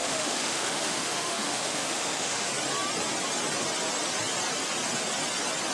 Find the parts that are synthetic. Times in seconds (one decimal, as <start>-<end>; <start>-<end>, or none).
0.0-2.5